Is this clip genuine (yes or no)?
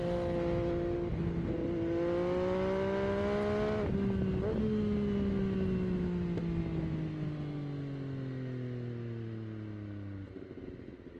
yes